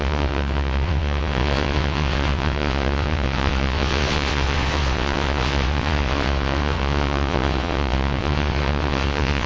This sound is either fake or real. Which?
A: fake